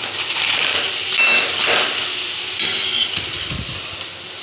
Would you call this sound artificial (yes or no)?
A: no